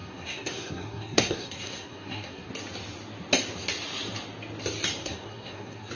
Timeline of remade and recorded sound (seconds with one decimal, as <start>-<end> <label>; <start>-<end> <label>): 0.0-2.5 remade; 2.5-5.0 recorded; 5.0-5.9 remade